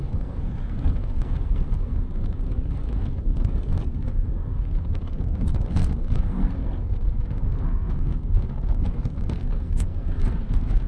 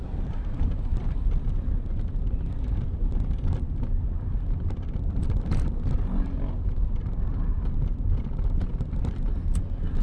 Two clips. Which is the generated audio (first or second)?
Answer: first